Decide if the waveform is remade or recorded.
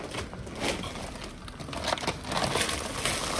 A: recorded